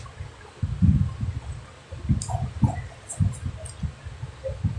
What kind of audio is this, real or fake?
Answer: real